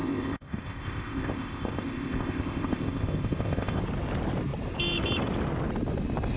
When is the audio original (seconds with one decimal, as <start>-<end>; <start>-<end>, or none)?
3.8-6.4